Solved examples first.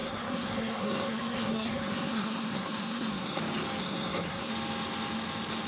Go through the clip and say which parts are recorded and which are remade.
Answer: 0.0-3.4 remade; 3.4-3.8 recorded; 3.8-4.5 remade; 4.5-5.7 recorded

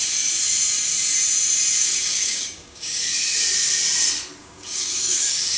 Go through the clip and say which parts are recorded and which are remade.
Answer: 0.0-1.8 recorded; 1.8-3.0 remade; 3.0-4.4 recorded; 4.4-5.6 remade

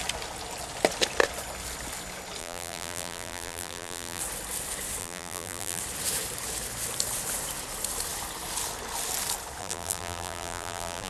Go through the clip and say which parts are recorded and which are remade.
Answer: 0.0-2.4 recorded; 2.4-4.2 remade; 4.2-5.0 recorded; 5.0-5.8 remade; 5.8-9.6 recorded; 9.6-11.1 remade